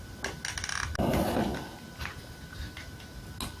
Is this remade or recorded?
recorded